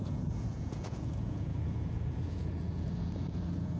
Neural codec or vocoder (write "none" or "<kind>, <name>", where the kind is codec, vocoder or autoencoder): vocoder, Vocos